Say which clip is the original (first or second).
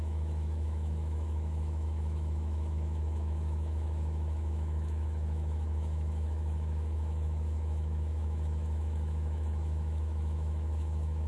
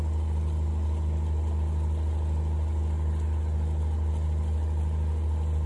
second